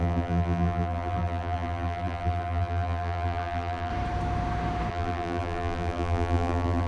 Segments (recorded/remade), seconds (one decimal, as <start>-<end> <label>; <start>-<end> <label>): 0.0-3.9 remade; 3.9-4.9 recorded; 4.9-6.9 remade